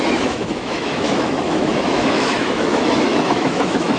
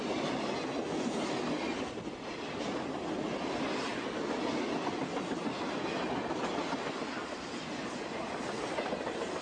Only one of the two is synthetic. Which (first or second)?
first